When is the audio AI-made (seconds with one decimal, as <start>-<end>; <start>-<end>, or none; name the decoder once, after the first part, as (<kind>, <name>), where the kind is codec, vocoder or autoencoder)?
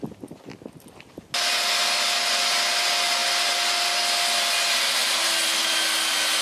none